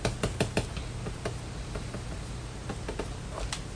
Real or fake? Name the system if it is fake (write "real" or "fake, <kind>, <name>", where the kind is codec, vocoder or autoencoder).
real